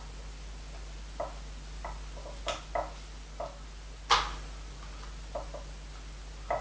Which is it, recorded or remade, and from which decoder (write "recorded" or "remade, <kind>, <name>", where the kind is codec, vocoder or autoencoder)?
recorded